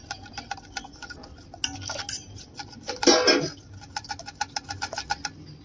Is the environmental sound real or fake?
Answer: real